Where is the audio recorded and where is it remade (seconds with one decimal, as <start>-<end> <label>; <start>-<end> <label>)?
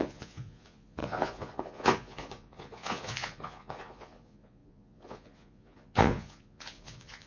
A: 0.0-7.3 remade